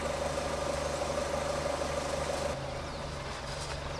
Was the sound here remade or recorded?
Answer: recorded